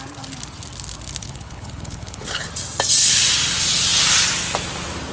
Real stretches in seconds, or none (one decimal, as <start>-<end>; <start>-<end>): 0.0-1.2; 2.5-5.1